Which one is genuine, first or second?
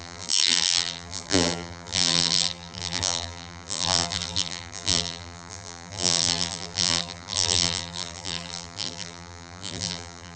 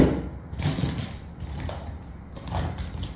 second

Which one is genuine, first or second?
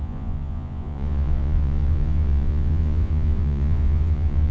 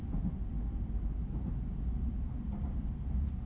second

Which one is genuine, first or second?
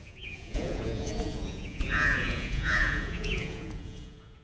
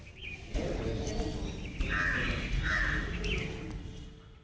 second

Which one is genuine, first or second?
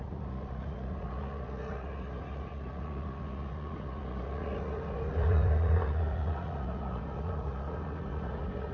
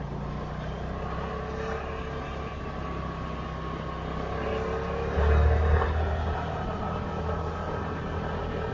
second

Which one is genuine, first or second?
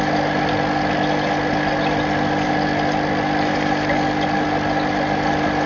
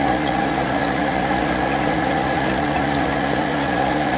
first